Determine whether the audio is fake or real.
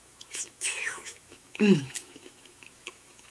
fake